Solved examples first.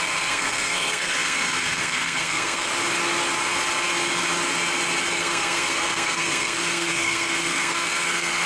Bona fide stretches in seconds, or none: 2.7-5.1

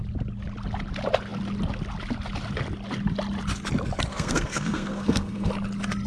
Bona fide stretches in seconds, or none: 0.0-4.1; 5.5-6.1

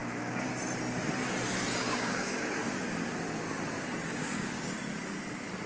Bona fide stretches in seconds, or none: 0.5-1.8; 2.6-4.1; 4.8-5.7

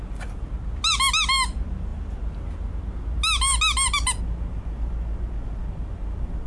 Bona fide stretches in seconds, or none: 0.0-6.5

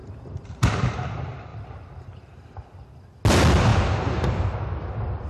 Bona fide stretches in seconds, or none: 1.0-1.5; 2.4-3.7; 4.3-5.3

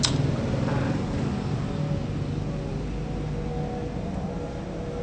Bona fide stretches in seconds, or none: 0.0-5.0

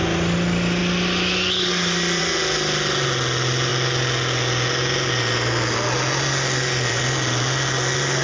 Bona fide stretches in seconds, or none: 0.0-8.2

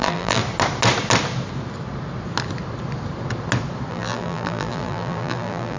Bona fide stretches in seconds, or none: 0.4-3.9